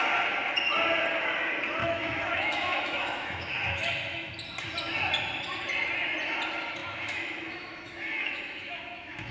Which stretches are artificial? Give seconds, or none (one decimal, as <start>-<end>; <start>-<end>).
1.8-4.3; 6.8-9.3

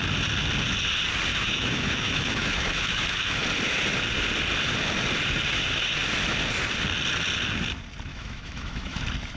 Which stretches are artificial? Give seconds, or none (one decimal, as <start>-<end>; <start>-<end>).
1.3-3.4; 8.1-9.0

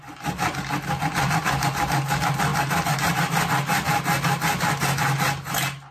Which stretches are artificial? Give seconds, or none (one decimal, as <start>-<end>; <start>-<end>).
none